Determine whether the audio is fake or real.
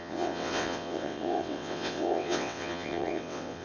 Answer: fake